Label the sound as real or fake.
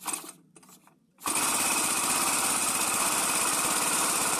fake